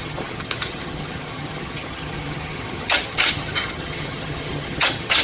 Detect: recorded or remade remade